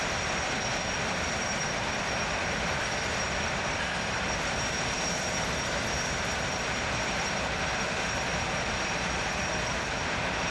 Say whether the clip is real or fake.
fake